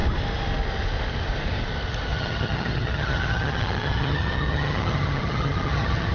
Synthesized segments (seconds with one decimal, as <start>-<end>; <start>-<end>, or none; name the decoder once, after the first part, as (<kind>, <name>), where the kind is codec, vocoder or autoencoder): 2.1-6.1 (vocoder, HiFi-GAN)